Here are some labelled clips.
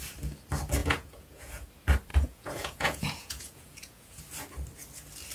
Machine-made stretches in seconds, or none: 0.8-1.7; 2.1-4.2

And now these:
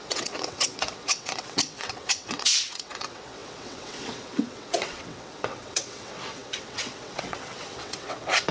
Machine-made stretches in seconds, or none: 0.0-8.5

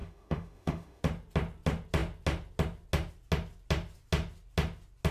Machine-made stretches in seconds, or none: 0.0-1.0